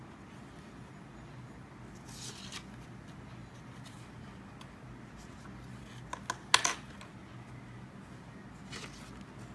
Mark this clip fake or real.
real